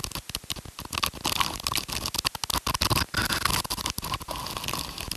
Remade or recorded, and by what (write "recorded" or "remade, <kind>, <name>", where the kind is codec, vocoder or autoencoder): recorded